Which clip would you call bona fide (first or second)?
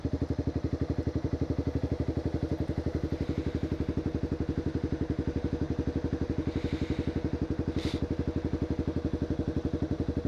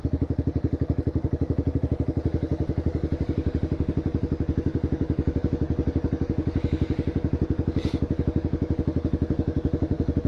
first